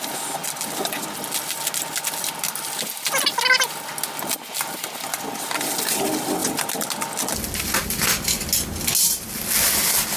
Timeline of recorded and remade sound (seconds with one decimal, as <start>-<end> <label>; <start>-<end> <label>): 0.0-10.2 recorded